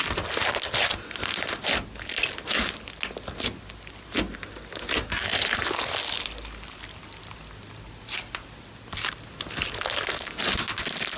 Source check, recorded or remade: recorded